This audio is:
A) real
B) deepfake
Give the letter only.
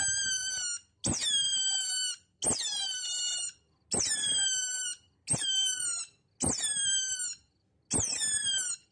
A